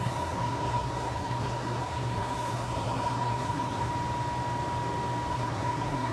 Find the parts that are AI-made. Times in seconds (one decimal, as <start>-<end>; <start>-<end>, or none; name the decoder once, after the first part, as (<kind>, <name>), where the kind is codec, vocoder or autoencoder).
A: 0.0-3.9 (codec, SNAC); 5.3-6.1